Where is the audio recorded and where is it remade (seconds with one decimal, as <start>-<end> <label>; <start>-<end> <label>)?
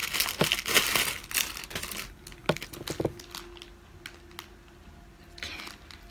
0.0-6.1 recorded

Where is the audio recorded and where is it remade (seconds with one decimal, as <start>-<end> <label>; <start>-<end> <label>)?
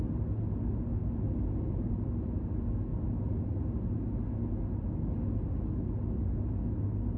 0.0-7.2 recorded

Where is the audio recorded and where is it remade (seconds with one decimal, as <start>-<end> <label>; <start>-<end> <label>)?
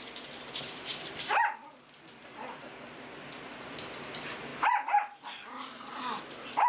0.0-4.5 remade; 4.5-6.7 recorded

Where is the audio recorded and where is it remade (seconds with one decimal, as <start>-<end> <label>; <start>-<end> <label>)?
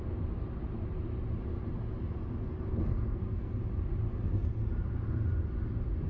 0.0-2.7 recorded; 2.7-3.5 remade; 3.5-6.1 recorded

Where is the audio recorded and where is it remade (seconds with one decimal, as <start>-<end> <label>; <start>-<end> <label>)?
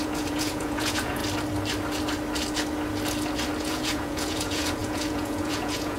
0.0-1.2 remade; 1.2-3.6 recorded; 3.6-6.0 remade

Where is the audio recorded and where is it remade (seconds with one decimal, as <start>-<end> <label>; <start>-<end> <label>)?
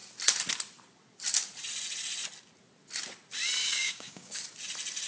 0.0-3.6 recorded; 3.6-4.4 remade; 4.4-5.1 recorded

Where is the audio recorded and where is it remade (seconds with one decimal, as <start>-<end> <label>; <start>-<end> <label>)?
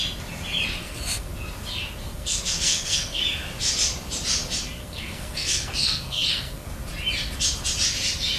0.0-0.8 recorded; 0.8-1.3 remade; 1.3-2.0 recorded; 2.0-3.2 remade; 3.2-4.8 recorded; 4.8-6.7 remade; 6.7-8.4 recorded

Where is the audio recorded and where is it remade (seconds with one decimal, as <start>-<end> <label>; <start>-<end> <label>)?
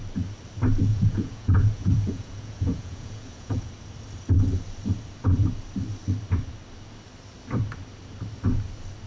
0.0-0.9 recorded; 0.9-3.7 remade; 3.7-9.1 recorded